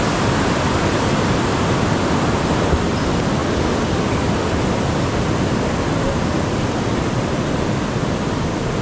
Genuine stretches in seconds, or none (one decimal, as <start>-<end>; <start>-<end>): 0.0-8.8